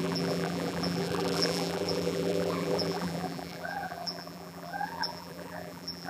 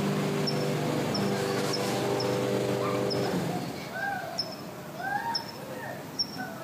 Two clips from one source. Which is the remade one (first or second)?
first